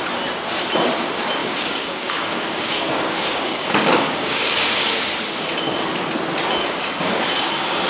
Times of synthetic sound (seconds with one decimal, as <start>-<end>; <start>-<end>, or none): 1.4-4.9; 6.6-7.2